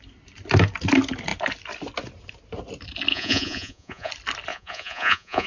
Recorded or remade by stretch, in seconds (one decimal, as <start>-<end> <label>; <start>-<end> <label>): 0.0-3.1 recorded; 3.1-4.1 remade; 4.1-4.5 recorded; 4.5-5.5 remade